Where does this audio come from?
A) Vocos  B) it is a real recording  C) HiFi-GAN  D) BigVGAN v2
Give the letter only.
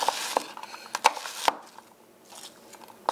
B